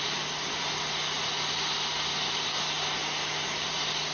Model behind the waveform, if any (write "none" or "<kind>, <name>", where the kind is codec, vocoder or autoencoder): none